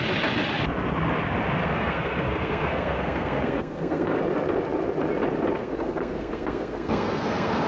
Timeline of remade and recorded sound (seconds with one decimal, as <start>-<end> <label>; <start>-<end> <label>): 0.0-1.6 recorded; 1.6-4.2 remade; 4.2-5.6 recorded; 5.6-7.7 remade